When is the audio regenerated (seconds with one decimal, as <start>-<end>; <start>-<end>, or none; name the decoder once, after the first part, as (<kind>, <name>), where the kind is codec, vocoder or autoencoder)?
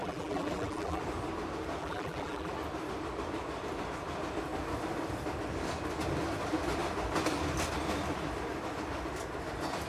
0.0-1.0 (vocoder, BigVGAN v2); 1.8-2.5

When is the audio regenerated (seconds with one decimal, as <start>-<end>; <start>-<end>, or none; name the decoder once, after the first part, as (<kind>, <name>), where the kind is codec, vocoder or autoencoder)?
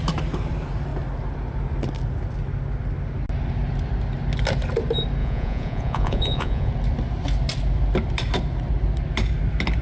5.2-6.7 (vocoder, Vocos)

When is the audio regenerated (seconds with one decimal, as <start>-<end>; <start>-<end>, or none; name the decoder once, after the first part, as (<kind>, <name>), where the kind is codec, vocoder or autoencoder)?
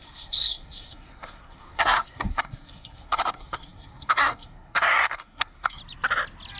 0.0-5.8 (codec, SNAC)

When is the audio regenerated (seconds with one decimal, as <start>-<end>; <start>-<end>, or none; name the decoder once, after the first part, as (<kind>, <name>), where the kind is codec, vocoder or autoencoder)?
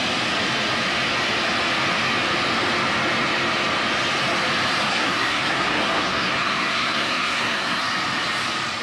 4.9-7.8 (codec, SNAC)